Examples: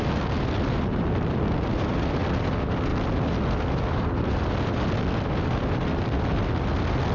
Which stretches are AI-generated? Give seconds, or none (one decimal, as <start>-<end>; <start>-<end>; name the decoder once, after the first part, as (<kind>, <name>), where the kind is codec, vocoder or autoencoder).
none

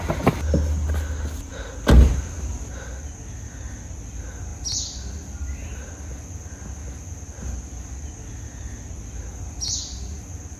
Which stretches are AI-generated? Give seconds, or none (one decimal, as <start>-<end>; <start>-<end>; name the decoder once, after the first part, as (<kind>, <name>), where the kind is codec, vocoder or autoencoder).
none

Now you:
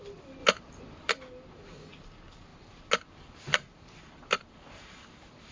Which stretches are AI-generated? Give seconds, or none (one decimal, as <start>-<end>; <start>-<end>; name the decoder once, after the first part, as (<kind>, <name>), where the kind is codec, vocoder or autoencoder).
0.4-1.1 (vocoder, BigVGAN v2); 2.5-5.1